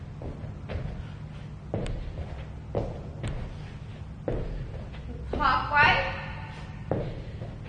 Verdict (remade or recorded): recorded